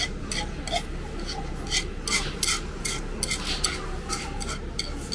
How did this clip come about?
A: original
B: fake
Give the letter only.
A